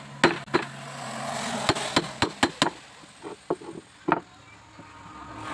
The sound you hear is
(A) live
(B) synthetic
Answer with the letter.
A